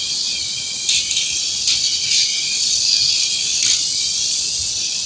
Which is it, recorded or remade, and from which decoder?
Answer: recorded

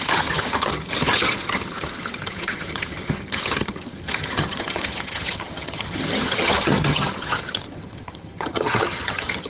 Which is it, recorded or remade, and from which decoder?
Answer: remade, vocoder, HiFi-GAN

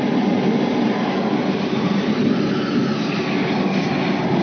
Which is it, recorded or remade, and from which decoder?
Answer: recorded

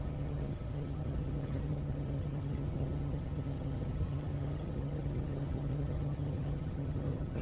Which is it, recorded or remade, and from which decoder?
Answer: remade, vocoder, HiFi-GAN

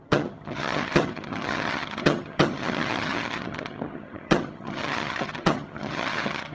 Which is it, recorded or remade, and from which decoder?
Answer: remade, vocoder, HiFi-GAN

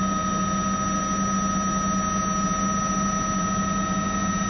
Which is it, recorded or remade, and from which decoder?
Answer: recorded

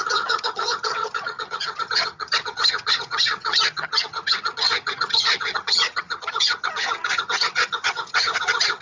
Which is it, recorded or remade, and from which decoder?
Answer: remade, vocoder, HiFi-GAN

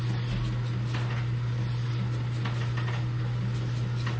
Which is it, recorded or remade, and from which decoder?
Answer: recorded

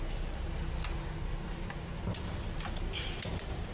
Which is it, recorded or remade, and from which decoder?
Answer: recorded